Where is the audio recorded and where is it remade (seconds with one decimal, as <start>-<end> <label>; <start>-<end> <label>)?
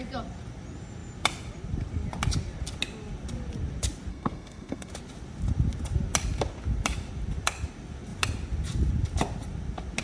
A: 0.0-4.1 recorded; 4.1-4.9 remade; 4.9-10.0 recorded